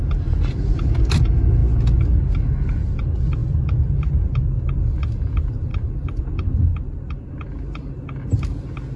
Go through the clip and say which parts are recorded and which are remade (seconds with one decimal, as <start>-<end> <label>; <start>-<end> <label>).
0.0-3.4 recorded; 3.4-4.1 remade; 4.1-5.7 recorded; 5.7-6.2 remade; 6.2-9.0 recorded